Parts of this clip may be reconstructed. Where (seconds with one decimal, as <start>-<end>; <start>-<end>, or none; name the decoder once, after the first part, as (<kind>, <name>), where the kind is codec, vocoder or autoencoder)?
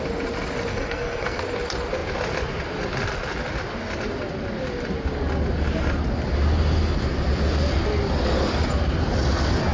0.7-1.4 (codec, SNAC)